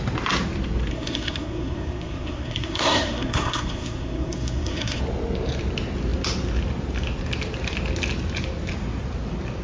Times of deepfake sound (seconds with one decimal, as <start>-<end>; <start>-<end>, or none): 0.9-5.0